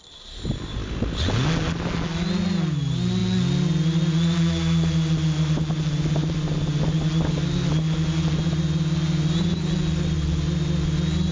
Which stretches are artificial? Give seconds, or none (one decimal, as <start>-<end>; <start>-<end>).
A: none

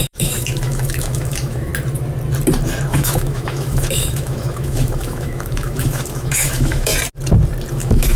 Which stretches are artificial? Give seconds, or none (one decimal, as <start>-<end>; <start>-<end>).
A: 0.0-1.7; 2.9-6.9; 7.7-8.2

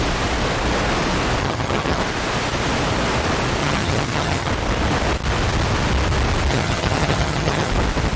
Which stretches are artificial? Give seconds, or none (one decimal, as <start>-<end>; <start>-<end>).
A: 1.4-2.0; 3.6-4.5; 6.5-7.7

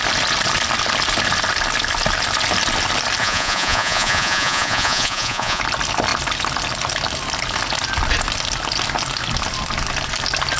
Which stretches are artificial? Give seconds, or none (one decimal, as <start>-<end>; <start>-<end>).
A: 3.2-5.6